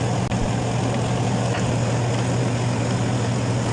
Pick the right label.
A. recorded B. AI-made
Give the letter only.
A